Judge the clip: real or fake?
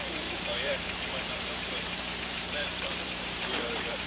fake